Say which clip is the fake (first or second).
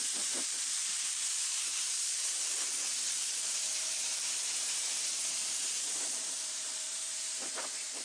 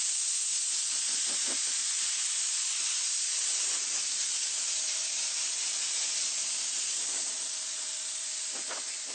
first